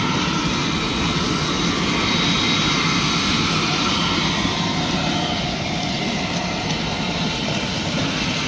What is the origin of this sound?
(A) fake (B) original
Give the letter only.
B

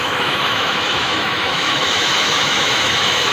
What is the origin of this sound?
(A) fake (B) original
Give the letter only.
A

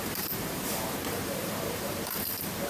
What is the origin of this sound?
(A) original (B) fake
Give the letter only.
B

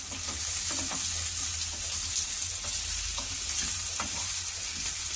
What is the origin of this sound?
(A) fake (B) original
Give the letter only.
B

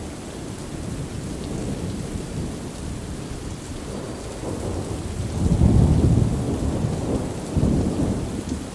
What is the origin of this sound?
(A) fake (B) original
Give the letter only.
B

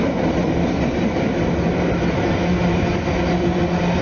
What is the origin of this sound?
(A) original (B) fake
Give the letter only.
A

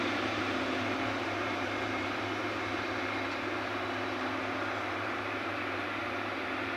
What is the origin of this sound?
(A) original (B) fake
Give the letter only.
B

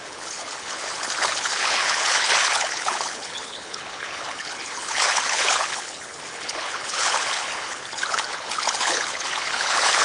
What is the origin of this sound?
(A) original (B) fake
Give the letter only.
B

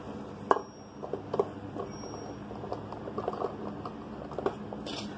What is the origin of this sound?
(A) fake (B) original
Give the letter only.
B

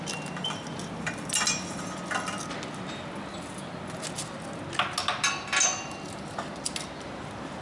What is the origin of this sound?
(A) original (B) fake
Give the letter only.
A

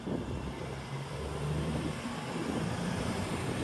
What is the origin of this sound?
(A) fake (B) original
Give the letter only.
A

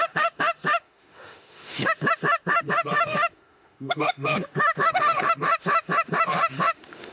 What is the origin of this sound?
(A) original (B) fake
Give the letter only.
B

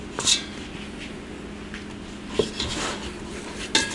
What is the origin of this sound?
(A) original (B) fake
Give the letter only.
A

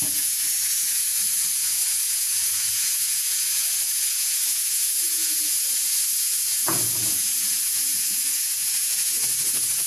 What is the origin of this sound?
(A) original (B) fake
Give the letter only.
B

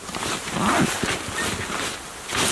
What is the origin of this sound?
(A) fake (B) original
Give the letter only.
B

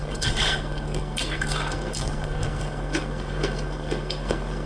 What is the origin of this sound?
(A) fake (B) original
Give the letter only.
A